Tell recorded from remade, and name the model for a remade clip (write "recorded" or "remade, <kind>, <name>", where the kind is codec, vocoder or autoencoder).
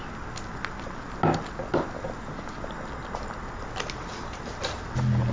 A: recorded